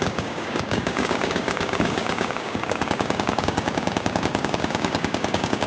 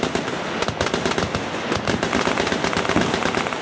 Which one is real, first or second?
second